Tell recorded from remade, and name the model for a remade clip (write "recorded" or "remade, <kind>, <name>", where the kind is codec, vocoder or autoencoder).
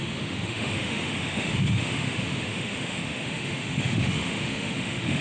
remade, autoencoder, DAC-VAE